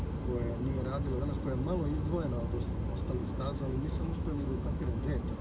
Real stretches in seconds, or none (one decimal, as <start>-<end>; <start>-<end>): 0.0-3.2; 5.0-5.4